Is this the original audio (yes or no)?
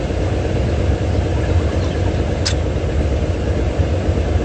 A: yes